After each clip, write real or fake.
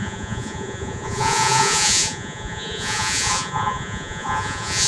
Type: fake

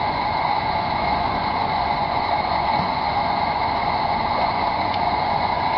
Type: fake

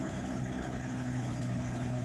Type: fake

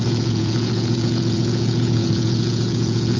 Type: fake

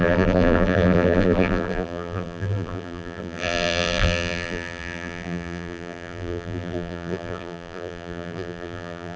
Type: fake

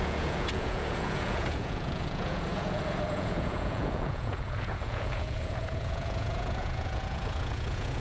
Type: fake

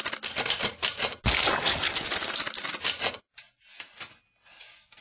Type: real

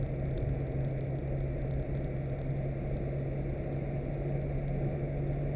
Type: real